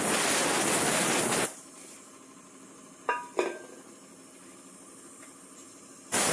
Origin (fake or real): real